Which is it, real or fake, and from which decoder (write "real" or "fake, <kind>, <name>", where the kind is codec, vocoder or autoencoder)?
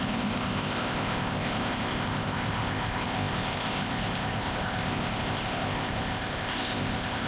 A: fake, codec, ZipCodec